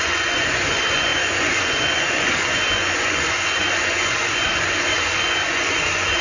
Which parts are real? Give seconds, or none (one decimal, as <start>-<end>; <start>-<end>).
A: none